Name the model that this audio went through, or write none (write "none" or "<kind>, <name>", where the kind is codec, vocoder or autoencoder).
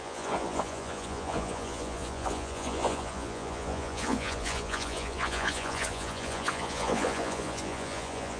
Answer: vocoder, Vocos